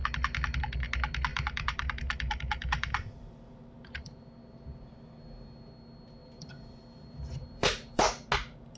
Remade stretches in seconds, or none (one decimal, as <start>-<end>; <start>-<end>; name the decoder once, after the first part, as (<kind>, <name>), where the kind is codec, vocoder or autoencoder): 1.3-4.2 (vocoder, BigVGAN v2); 6.2-8.3